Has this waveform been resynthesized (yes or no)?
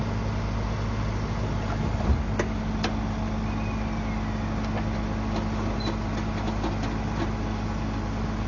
no